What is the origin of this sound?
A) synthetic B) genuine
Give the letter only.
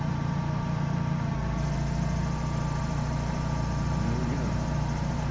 A